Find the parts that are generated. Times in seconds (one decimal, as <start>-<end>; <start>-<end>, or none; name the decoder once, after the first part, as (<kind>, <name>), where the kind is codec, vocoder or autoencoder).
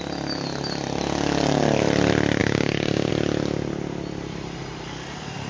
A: 2.4-3.1 (codec, DAC)